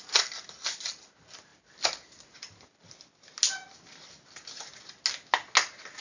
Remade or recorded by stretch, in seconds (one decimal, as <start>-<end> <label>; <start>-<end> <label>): 0.0-6.0 recorded